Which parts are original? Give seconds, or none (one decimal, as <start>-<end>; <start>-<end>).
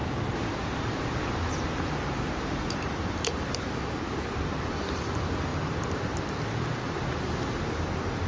4.0-5.5; 7.0-8.3